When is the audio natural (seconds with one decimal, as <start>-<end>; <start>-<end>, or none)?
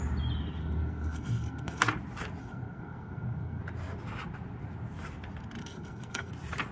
0.0-0.6; 1.8-2.4; 3.6-5.6; 6.3-6.7